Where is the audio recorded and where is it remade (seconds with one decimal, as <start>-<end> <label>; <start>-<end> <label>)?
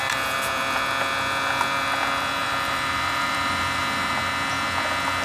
0.0-2.4 recorded; 2.4-3.8 remade; 3.8-5.2 recorded